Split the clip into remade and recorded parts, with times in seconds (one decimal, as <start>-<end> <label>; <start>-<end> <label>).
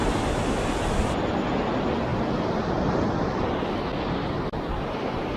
0.0-5.4 recorded